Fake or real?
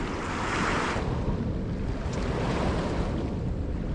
real